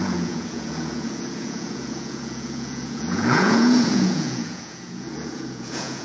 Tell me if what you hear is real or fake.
fake